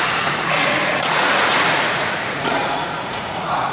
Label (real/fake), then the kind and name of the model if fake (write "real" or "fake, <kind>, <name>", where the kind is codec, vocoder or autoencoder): fake, vocoder, Vocos